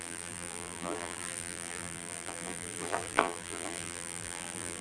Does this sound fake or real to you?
fake